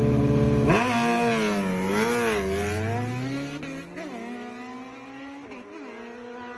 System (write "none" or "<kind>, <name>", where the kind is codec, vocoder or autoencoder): none